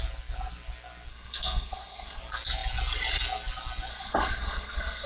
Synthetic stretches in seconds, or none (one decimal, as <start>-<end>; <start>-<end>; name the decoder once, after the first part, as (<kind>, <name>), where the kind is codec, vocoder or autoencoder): 1.1-2.2 (codec, SNAC); 3.9-5.1